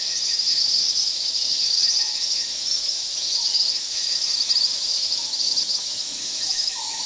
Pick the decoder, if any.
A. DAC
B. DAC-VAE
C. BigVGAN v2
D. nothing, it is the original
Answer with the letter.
B